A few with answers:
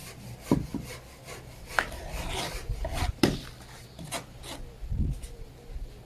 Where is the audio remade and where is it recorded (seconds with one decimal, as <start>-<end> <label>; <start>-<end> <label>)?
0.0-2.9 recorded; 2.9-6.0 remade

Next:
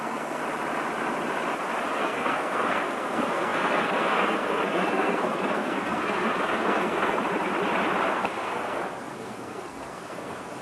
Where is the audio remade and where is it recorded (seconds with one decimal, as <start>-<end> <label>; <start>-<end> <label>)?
0.0-0.4 remade; 0.4-2.0 recorded; 2.0-7.2 remade; 7.2-8.1 recorded; 8.1-10.6 remade

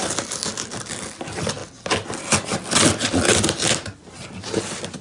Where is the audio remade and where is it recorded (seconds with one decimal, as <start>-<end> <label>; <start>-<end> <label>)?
0.0-5.0 recorded